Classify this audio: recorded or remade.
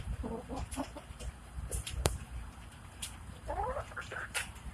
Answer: remade